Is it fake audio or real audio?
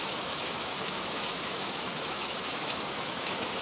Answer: fake